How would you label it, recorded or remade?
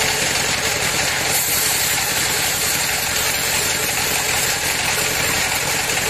remade